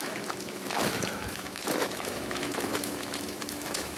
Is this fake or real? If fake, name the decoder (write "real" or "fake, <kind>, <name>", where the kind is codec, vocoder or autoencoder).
fake, autoencoder, DAC-VAE